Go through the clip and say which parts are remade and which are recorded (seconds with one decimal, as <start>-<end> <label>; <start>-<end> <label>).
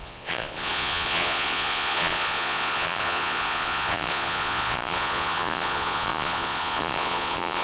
0.0-7.6 remade